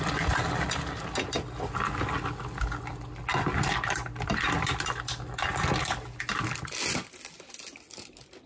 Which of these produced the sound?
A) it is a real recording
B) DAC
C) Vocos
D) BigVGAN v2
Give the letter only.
A